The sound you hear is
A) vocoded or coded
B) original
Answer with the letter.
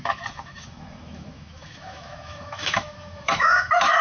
A